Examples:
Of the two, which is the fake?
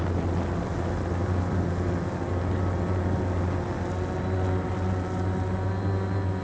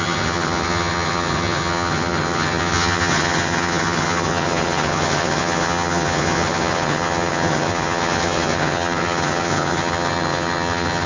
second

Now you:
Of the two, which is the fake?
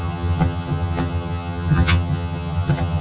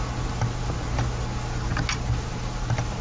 first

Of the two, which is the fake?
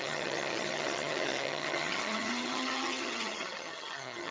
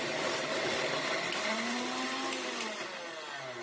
first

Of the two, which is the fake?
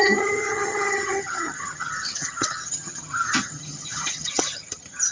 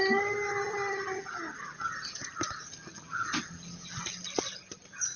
first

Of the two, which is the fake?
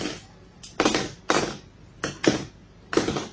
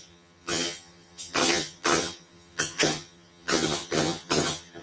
second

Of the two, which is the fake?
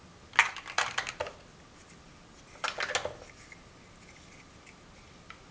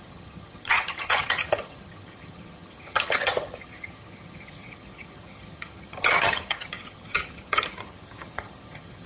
second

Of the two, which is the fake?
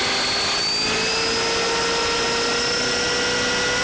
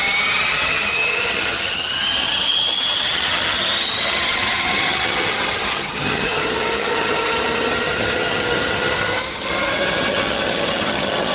second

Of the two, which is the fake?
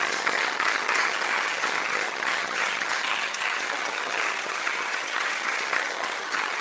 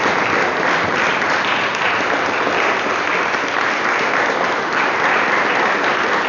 first